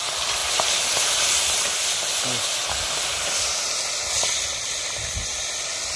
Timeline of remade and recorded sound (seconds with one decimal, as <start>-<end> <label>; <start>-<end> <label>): 0.0-6.0 recorded